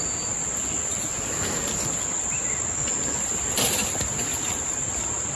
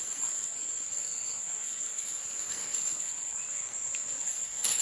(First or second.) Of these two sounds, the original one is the first